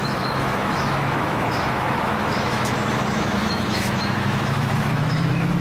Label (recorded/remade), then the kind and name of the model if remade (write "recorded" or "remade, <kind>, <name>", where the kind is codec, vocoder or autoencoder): remade, autoencoder, DAC-VAE